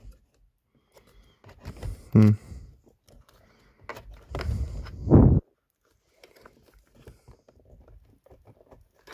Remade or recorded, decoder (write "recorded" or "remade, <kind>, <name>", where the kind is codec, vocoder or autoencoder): recorded